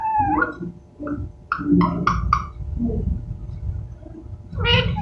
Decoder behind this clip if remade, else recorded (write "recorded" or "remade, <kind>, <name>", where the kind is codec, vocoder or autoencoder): recorded